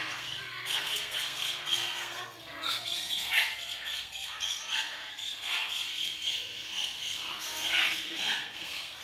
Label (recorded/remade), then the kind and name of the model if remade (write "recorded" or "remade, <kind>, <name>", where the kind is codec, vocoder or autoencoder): remade, codec, SNAC